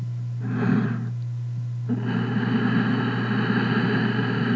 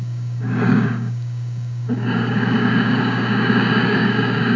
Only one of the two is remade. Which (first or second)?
second